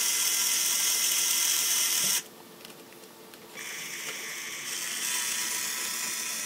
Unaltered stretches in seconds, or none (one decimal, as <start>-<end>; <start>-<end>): 0.0-1.5; 2.1-3.7; 4.7-6.5